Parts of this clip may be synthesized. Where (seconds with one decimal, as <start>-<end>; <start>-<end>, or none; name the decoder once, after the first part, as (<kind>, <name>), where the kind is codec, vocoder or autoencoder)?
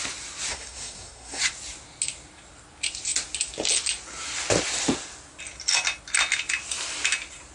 0.5-1.4 (codec, SNAC)